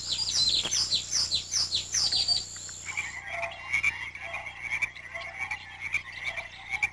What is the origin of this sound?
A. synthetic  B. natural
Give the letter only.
B